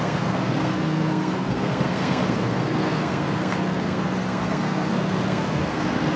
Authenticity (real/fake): fake